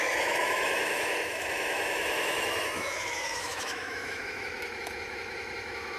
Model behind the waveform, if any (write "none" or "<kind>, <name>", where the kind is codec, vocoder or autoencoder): autoencoder, DAC-VAE